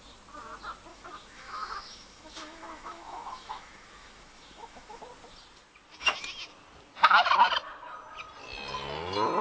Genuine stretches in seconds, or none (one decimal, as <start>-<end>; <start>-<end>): 0.0-0.9; 5.0-9.4